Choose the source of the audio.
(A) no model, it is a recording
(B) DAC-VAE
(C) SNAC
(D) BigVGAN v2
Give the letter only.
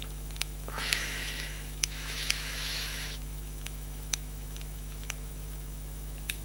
B